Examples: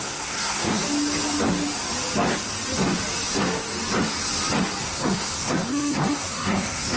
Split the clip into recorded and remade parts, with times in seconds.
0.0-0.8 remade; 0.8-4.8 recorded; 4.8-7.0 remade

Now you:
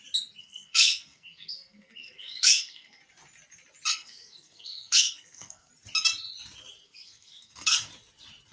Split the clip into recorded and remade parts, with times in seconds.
0.0-0.4 recorded; 0.4-3.0 remade; 3.0-3.9 recorded; 3.9-5.7 remade; 5.7-6.8 recorded; 6.8-7.9 remade; 7.9-8.5 recorded

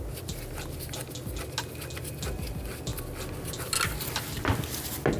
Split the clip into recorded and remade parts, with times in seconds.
0.0-5.2 recorded

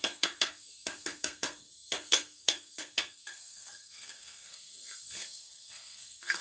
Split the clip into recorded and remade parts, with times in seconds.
0.0-6.4 remade

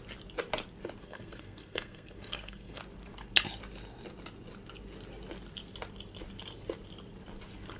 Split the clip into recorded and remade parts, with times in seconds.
0.0-1.0 recorded; 1.0-2.8 remade; 2.8-7.8 recorded

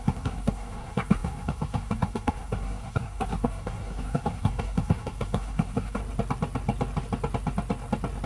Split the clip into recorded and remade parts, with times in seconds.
0.0-6.0 remade; 6.0-8.3 recorded